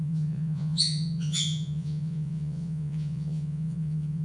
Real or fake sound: fake